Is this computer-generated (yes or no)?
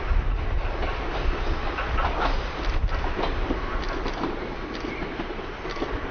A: no